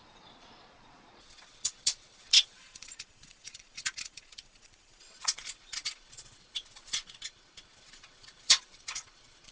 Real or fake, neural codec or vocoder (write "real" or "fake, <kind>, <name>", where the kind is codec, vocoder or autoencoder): fake, vocoder, Vocos